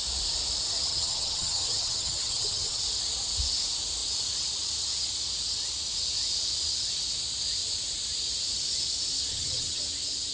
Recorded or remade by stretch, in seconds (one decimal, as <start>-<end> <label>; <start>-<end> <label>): 0.0-0.9 recorded; 0.9-2.8 remade; 2.8-9.3 recorded; 9.3-9.8 remade; 9.8-10.3 recorded